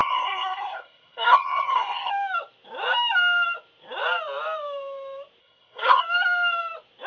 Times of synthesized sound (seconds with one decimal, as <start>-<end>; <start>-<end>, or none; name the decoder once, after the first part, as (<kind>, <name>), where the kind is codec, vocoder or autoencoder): 0.0-2.1 (codec, SNAC); 5.4-6.0